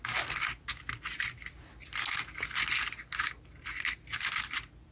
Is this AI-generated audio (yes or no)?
no